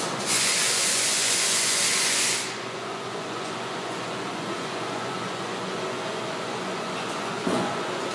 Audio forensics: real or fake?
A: fake